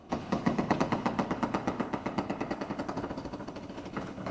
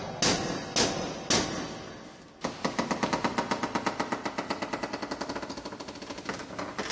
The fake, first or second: first